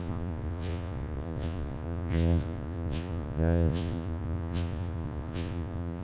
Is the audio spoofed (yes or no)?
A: yes